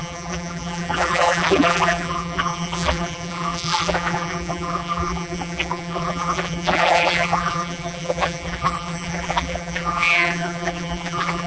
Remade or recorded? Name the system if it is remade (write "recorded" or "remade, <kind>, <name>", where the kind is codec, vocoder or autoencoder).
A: remade, vocoder, BigVGAN v2